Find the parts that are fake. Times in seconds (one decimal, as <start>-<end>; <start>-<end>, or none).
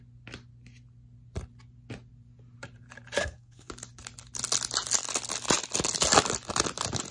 3.2-3.7